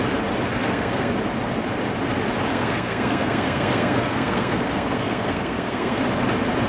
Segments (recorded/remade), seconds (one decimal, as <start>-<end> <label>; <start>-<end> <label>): 0.0-0.5 recorded; 0.5-1.1 remade; 1.1-2.5 recorded; 2.5-6.0 remade; 6.0-6.7 recorded